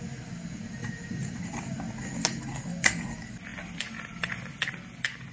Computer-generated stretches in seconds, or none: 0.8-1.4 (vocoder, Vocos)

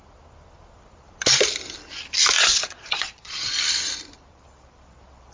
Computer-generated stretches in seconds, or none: 2.4-3.5 (vocoder, Vocos)

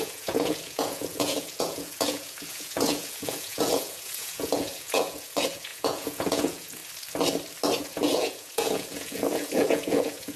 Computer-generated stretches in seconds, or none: 0.0-6.8 (vocoder, Vocos); 7.8-10.4

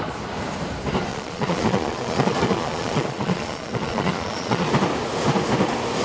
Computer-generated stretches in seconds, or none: 1.1-4.7 (vocoder, Vocos)

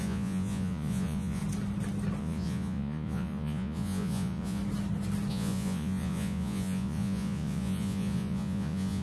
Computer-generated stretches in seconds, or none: 0.0-1.4 (vocoder, Vocos); 2.2-4.6; 5.3-9.0